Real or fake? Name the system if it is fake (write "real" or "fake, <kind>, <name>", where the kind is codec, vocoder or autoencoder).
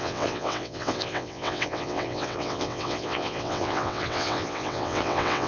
fake, vocoder, WaveNeXt